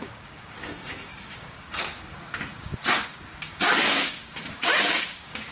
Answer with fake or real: fake